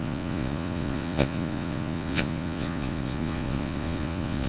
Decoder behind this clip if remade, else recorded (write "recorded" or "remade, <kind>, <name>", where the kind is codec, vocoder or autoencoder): remade, vocoder, Vocos